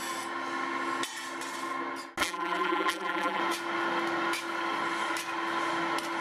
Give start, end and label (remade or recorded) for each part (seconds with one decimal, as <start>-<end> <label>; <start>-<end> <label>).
0.0-2.2 recorded; 2.2-3.4 remade; 3.4-6.2 recorded